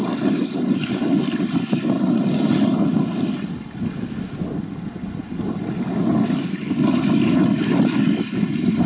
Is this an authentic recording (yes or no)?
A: yes